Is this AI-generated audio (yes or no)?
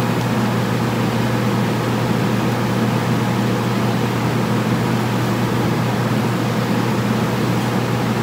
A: no